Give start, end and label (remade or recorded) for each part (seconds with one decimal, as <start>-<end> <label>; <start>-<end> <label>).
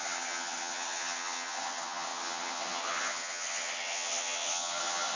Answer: 0.0-5.2 remade